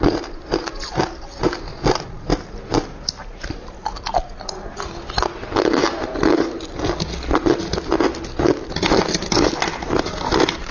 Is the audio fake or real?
real